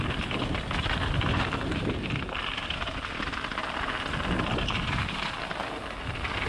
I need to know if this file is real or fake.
real